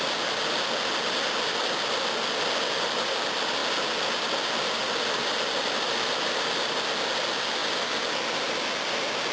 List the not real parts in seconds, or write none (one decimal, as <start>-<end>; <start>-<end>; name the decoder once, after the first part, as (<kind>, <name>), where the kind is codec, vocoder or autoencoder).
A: 7.6-8.4 (vocoder, BigVGAN v2)